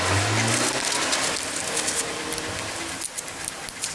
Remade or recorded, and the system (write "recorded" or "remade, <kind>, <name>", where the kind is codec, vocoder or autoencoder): recorded